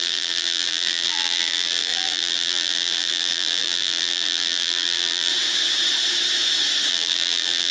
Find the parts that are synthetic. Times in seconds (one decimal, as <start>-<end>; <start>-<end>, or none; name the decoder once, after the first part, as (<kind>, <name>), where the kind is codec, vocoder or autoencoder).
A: 0.0-5.3 (vocoder, BigVGAN v2); 6.9-7.7